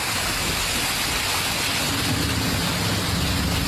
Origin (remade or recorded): recorded